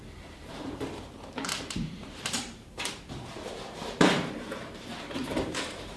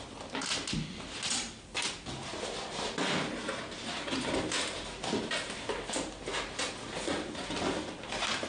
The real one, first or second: second